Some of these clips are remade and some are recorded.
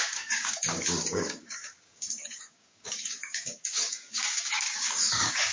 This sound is remade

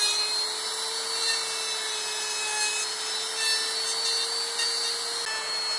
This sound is recorded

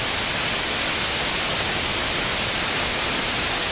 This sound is recorded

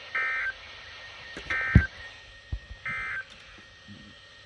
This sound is recorded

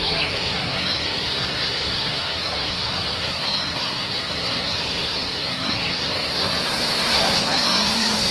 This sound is remade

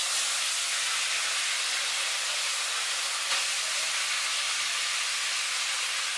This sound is recorded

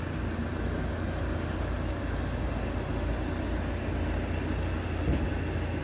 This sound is recorded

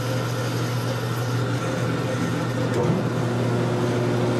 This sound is recorded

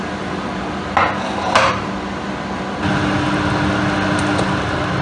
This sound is recorded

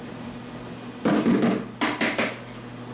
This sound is recorded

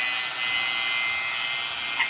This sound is recorded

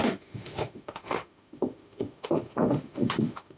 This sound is remade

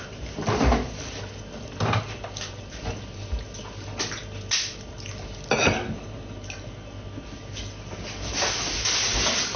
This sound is recorded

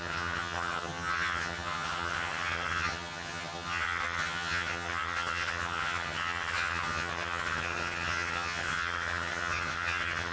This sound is remade